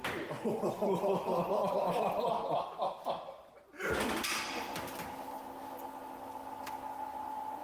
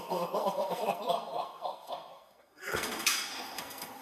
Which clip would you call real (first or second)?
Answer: first